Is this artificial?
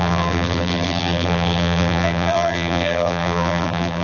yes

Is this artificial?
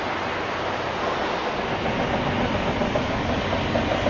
no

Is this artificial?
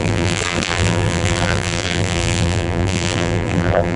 yes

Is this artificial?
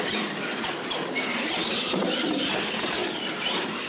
yes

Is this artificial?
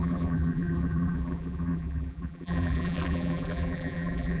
yes